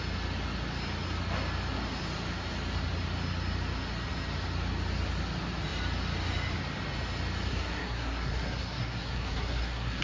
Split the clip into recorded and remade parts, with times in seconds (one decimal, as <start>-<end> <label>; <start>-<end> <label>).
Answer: 0.0-7.5 recorded; 7.5-10.0 remade